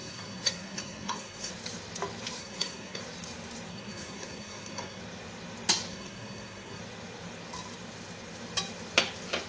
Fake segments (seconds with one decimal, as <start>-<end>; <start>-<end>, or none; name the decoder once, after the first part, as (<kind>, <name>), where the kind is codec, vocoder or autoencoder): 0.0-1.5 (codec, SNAC); 2.4-3.0; 3.7-5.0; 5.9-6.8